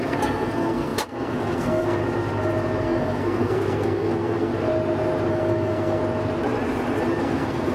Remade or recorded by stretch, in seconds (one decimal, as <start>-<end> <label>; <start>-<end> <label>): 0.0-2.0 remade; 2.0-2.8 recorded; 2.8-4.5 remade; 4.5-5.3 recorded; 5.3-6.0 remade; 6.0-7.2 recorded; 7.2-7.7 remade

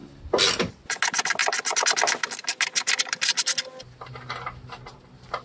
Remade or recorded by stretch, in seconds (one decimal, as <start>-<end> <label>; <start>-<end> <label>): 0.0-5.4 recorded